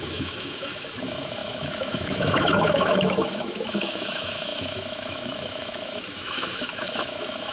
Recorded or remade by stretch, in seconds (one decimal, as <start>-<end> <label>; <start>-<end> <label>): 0.0-7.5 remade